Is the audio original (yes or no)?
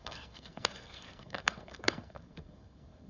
no